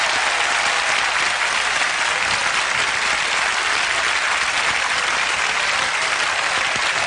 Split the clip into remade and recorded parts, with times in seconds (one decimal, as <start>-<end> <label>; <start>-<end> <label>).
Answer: 0.0-7.1 recorded